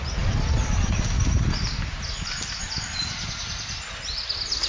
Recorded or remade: recorded